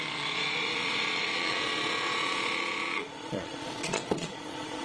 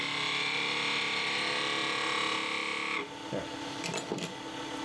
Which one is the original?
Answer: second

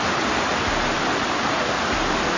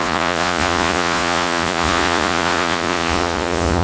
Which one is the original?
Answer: first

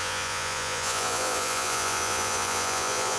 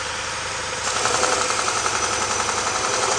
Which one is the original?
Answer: second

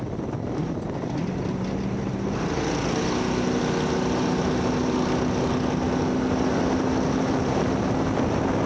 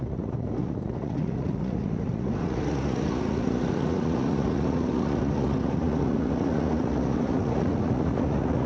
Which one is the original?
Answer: first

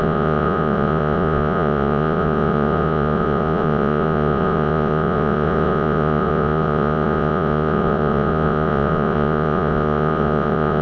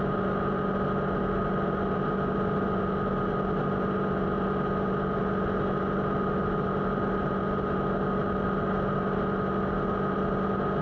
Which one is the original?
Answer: second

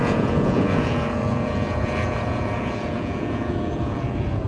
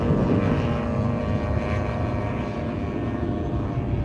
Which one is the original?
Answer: second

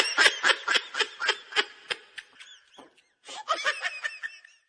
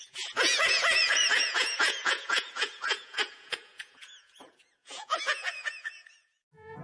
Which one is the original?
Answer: first